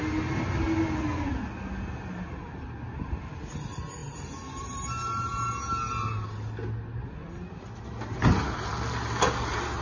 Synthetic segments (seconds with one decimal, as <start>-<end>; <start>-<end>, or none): none